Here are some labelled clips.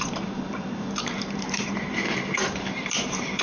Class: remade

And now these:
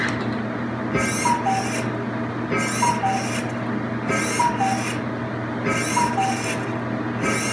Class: recorded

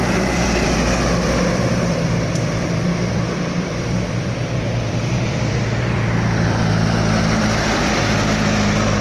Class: remade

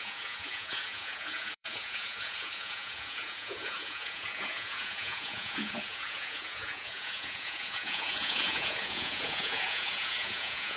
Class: remade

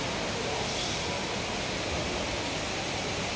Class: recorded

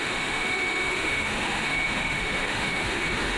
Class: remade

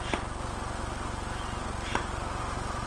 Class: recorded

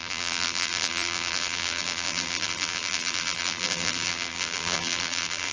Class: remade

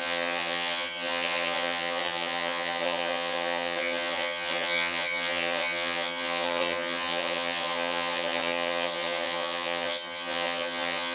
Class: remade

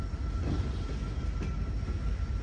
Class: recorded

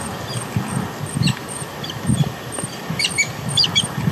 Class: recorded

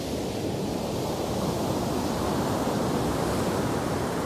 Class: recorded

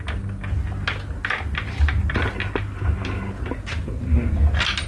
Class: recorded